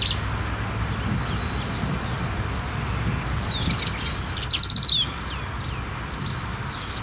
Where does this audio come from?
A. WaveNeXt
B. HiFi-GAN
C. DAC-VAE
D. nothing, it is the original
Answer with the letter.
D